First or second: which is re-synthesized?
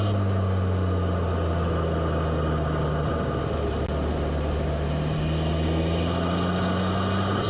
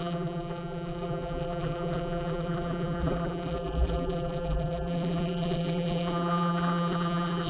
second